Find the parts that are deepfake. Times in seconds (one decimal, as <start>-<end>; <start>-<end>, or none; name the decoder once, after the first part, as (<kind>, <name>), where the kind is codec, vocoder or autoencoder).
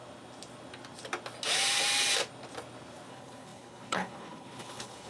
3.1-5.1 (codec, HILCodec)